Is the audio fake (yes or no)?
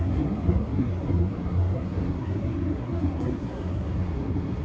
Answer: yes